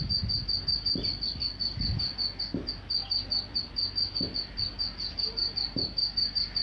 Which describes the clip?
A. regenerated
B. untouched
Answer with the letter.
B